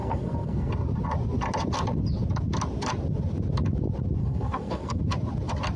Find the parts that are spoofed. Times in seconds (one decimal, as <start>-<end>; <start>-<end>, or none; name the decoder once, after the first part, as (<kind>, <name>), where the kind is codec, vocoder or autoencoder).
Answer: 0.0-0.7 (codec, SNAC); 4.2-5.0